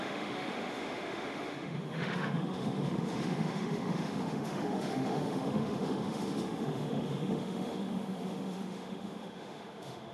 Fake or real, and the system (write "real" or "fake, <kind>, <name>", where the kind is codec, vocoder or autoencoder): fake, autoencoder, DAC-VAE